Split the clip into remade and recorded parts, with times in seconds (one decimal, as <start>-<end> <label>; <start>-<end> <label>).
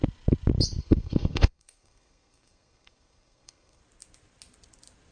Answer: 0.0-0.8 recorded; 0.8-3.8 remade; 3.8-5.1 recorded